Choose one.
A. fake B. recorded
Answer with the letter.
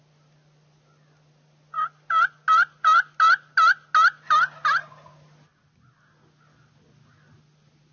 B